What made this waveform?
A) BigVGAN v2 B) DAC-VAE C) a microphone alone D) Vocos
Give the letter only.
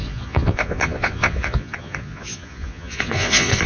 D